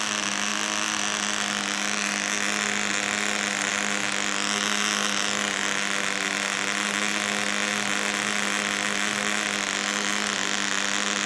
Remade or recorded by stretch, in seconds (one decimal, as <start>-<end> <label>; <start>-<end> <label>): 0.0-11.3 recorded